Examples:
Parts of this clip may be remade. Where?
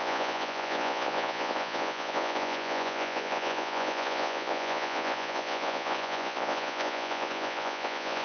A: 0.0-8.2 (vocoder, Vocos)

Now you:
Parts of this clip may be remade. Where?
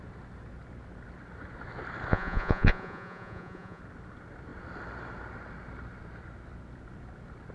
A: 2.1-3.8 (vocoder, Vocos)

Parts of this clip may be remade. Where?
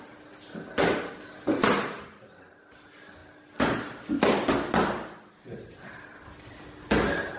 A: none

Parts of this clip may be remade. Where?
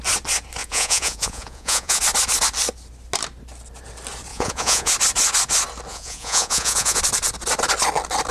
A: 0.6-2.0 (vocoder, Vocos); 4.3-4.9; 5.9-7.0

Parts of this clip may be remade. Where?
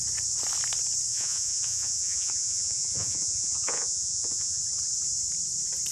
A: 1.1-4.6 (vocoder, Vocos)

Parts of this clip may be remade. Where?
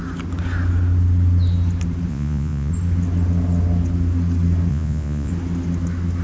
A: 2.1-2.7 (vocoder, Vocos); 4.7-5.3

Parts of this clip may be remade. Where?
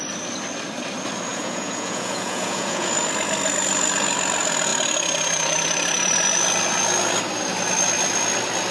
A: 1.3-2.9 (vocoder, Vocos)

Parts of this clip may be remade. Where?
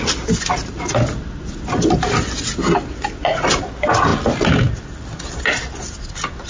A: none